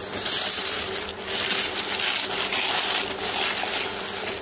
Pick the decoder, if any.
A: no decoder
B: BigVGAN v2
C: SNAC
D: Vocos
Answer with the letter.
A